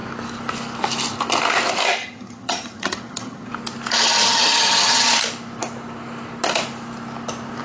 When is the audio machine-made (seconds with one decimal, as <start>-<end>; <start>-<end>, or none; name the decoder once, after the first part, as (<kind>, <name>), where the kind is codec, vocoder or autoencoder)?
2.0-3.5 (vocoder, HiFi-GAN); 4.2-5.1

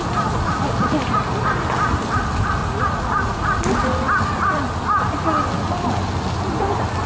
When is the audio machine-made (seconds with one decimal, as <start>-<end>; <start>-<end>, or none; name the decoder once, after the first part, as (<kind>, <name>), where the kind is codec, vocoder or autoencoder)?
2.6-3.6 (vocoder, Vocos)

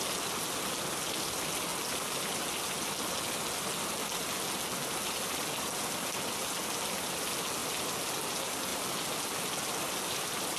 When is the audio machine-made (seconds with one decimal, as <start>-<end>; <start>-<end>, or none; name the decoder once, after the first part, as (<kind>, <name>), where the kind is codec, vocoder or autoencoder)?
none

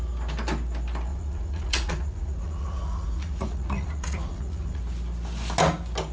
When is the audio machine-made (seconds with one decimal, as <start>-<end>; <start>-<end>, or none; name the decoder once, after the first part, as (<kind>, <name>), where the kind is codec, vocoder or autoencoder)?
1.1-4.8 (vocoder, Vocos)

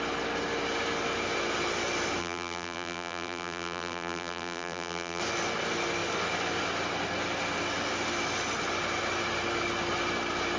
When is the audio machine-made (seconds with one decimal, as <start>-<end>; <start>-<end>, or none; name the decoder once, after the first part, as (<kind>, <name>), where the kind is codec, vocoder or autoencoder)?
2.2-5.2 (vocoder, BigVGAN v2)

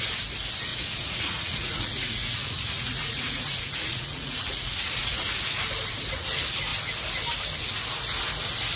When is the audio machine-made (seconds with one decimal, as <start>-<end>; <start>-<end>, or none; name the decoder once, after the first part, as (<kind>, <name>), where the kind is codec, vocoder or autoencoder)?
0.7-5.3 (vocoder, Vocos)

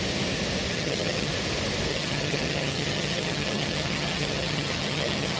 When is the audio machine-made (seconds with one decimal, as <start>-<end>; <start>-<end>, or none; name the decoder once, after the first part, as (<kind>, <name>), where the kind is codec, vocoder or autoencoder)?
0.7-1.3 (vocoder, HiFi-GAN); 1.9-5.4